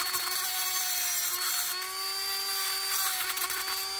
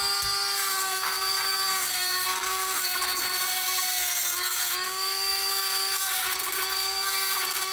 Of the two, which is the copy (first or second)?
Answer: second